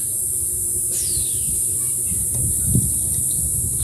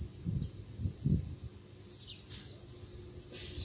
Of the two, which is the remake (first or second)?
first